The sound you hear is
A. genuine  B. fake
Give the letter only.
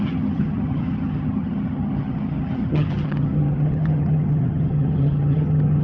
B